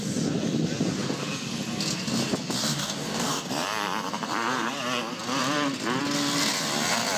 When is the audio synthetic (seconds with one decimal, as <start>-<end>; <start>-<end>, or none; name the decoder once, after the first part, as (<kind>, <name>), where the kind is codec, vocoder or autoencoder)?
2.6-3.5 (codec, DAC)